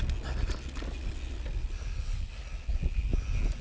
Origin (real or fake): real